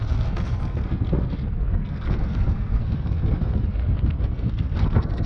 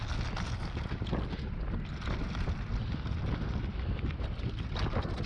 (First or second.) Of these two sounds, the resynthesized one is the first